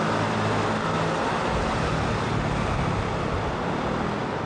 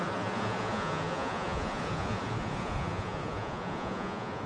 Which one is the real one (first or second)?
first